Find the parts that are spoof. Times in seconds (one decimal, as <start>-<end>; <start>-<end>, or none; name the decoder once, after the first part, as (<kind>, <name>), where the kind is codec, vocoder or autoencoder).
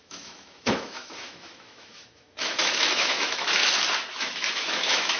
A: 0.0-3.6 (autoencoder, DAC-VAE); 4.1-5.2